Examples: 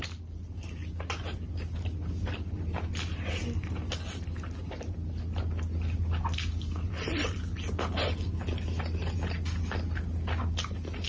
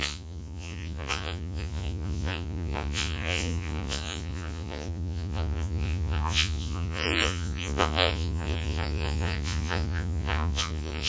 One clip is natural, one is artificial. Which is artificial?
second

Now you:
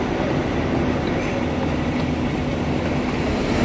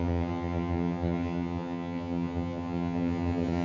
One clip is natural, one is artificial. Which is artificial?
second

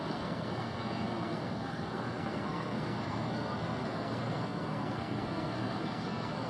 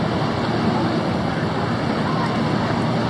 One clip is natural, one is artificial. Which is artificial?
first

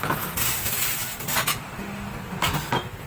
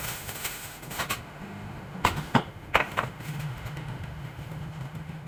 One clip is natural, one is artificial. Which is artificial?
second